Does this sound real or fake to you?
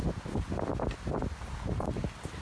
real